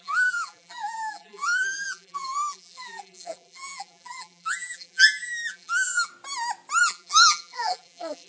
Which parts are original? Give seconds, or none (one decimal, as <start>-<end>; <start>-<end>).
6.1-6.8